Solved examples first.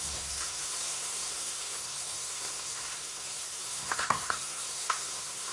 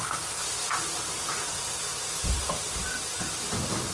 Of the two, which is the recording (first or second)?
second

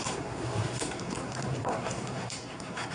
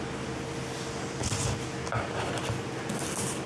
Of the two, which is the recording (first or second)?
second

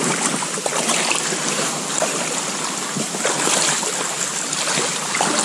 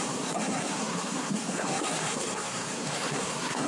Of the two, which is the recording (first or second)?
first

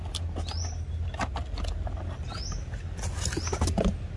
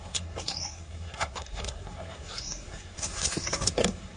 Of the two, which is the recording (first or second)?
first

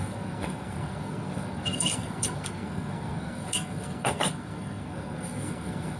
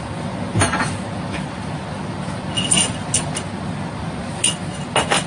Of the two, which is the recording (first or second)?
second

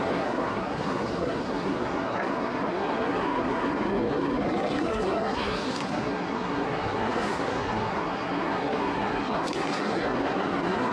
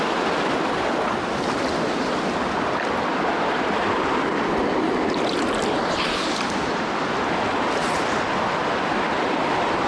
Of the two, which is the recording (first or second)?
second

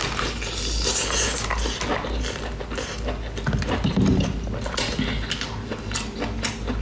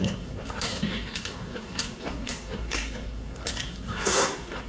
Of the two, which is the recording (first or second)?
first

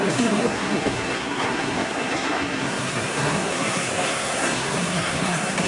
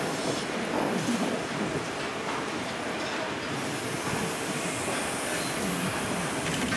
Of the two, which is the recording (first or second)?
second